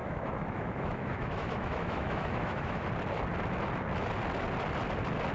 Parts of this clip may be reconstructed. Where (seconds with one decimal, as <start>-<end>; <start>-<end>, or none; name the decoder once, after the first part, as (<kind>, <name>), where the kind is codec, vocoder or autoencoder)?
0.0-2.9 (autoencoder, DAC-VAE)